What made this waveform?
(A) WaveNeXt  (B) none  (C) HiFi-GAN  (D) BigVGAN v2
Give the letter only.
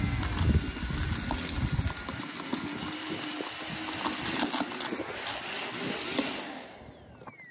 B